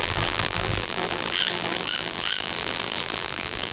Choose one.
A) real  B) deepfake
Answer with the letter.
B